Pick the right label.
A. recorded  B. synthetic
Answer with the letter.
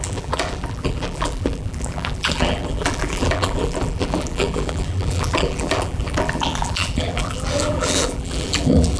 B